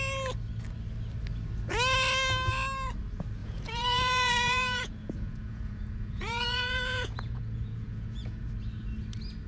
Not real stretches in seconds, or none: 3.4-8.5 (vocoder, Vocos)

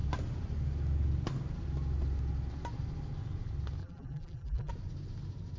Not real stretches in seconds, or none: 3.8-4.7 (vocoder, BigVGAN v2)

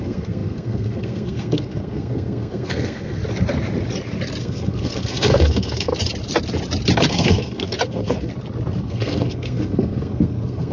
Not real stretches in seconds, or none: 0.0-3.2 (codec, SNAC); 4.4-5.9; 7.1-8.3; 8.8-10.7

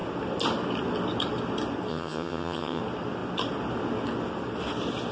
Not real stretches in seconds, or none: 1.9-2.8 (vocoder, HiFi-GAN)

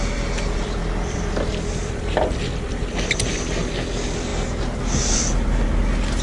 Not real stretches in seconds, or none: 1.5-3.2 (vocoder, BigVGAN v2)

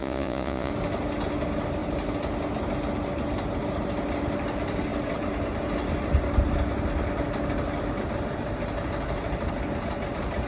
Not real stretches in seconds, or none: 0.0-0.7 (vocoder, Vocos)

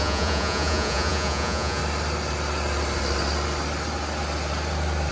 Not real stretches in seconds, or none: 0.0-1.8 (vocoder, Vocos)

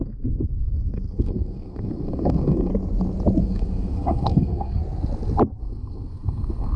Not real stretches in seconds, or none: 0.0-2.7 (codec, SNAC); 3.4-4.8; 5.6-6.8